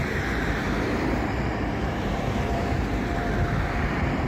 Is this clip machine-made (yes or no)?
yes